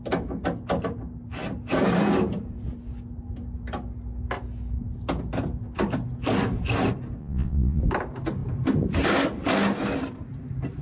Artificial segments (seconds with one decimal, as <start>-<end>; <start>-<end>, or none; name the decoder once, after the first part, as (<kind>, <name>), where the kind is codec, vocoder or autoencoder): 7.2-7.8 (vocoder, Vocos)